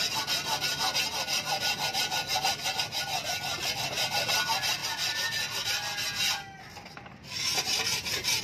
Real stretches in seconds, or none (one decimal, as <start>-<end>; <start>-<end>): 0.0-8.4